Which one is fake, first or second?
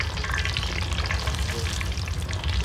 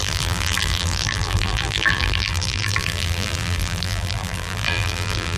second